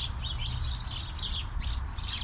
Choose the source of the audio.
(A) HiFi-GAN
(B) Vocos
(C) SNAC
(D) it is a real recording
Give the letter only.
D